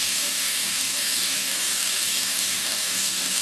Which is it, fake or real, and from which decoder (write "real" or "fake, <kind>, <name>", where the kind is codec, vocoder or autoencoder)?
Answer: fake, codec, DAC